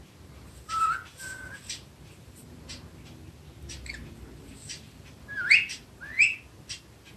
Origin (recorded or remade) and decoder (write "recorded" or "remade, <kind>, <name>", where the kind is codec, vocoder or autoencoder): recorded